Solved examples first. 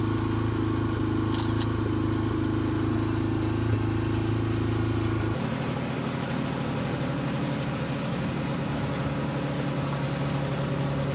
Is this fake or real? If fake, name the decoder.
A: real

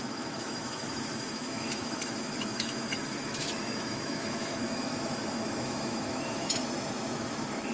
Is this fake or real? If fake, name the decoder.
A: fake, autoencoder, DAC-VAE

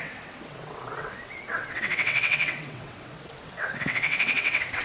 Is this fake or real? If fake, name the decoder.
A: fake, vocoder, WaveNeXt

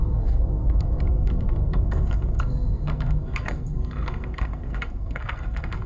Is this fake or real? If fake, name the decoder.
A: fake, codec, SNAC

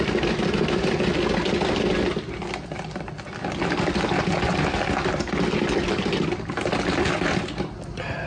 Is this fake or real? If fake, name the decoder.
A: real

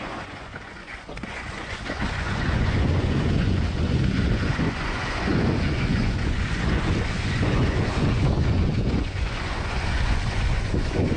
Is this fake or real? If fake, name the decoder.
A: fake, vocoder, Vocos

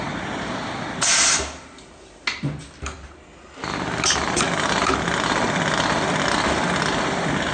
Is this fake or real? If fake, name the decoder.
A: real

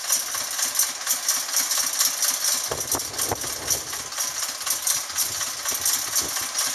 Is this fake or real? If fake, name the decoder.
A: real